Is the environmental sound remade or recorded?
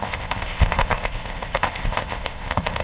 remade